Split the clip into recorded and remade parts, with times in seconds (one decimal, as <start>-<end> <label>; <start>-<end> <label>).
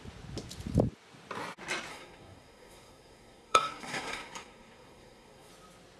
0.0-1.9 recorded; 1.9-5.5 remade; 5.5-6.0 recorded